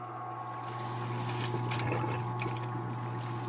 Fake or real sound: real